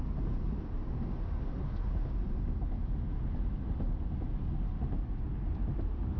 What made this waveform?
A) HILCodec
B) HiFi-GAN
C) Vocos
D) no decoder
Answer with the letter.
D